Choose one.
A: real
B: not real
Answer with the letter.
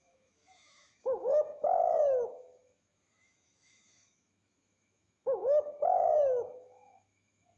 B